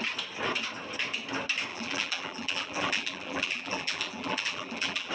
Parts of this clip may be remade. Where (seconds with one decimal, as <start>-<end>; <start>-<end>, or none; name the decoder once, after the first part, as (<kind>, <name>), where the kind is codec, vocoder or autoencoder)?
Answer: 1.7-5.1 (vocoder, BigVGAN v2)

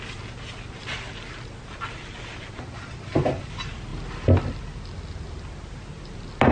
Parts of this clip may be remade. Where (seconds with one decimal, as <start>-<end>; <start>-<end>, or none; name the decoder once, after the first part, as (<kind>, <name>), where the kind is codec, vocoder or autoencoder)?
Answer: none